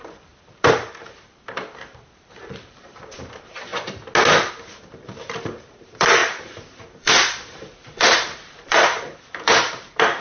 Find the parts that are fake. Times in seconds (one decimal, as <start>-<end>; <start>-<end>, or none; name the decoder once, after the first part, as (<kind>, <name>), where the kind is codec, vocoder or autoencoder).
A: 0.0-3.7 (vocoder, BigVGAN v2); 4.5-10.2